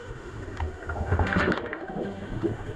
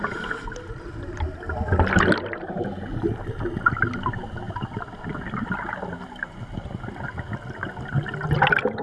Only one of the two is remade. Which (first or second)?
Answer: first